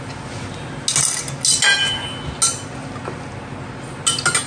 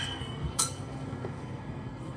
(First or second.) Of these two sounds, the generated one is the second